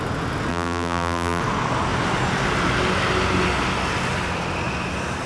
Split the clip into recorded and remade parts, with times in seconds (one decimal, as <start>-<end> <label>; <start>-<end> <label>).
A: 0.0-0.5 recorded; 0.5-1.4 remade; 1.4-5.3 recorded